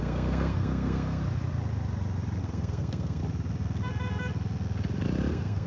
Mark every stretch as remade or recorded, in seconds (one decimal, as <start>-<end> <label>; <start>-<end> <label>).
0.0-1.2 remade; 1.2-2.4 recorded; 2.4-3.2 remade; 3.2-5.3 recorded; 5.3-5.7 remade

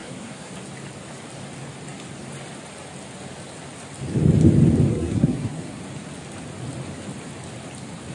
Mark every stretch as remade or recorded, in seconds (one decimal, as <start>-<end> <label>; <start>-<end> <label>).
0.0-0.5 remade; 0.5-4.9 recorded; 4.9-5.8 remade; 5.8-8.1 recorded

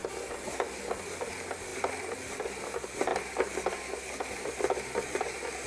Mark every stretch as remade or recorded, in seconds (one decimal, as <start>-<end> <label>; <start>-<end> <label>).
0.0-5.7 recorded

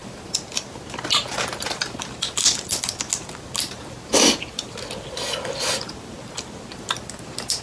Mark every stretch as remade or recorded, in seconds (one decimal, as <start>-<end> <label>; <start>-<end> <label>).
0.0-7.6 recorded

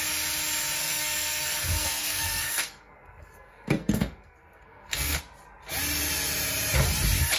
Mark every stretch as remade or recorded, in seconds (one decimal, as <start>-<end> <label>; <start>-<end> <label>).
0.0-0.8 recorded; 0.8-5.2 remade; 5.2-7.4 recorded

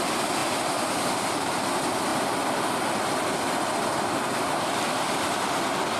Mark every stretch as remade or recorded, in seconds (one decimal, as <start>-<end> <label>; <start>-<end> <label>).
0.0-6.0 recorded

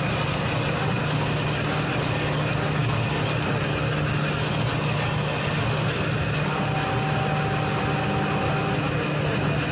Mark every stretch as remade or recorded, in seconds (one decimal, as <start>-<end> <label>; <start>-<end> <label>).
0.0-9.7 recorded

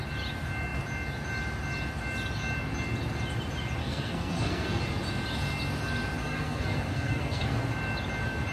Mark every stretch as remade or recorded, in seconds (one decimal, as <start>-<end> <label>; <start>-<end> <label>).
0.0-3.8 recorded; 3.8-4.8 remade; 4.8-6.2 recorded; 6.2-7.6 remade; 7.6-8.5 recorded